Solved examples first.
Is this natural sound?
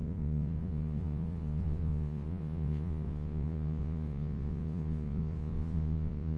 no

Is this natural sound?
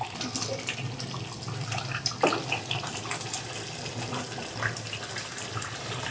yes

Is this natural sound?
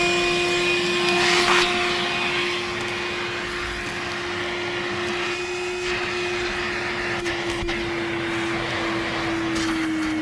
yes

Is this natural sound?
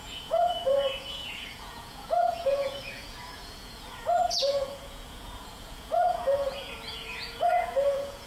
no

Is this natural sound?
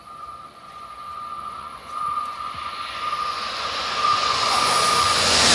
no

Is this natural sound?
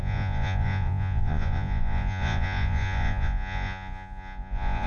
no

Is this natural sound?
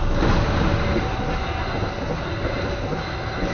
yes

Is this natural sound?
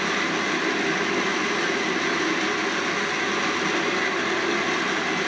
yes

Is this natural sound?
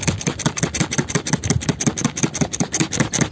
yes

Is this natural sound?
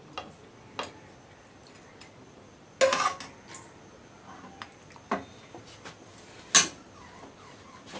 yes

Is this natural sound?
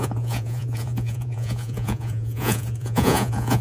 no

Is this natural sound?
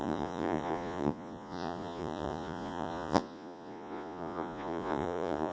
no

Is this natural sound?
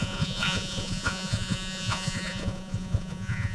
no